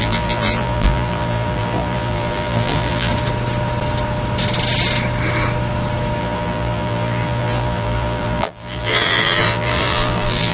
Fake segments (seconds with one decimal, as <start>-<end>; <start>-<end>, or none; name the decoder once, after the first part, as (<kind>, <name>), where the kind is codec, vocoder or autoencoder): 0.0-3.1 (vocoder, BigVGAN v2); 6.2-10.5